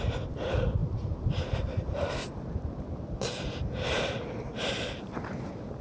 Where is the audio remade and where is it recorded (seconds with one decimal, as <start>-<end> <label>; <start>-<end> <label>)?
0.0-5.8 recorded